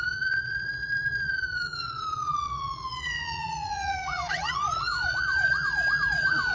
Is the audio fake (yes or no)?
yes